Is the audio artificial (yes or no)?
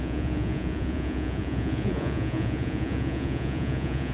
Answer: yes